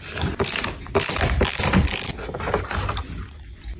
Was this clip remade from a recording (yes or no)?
no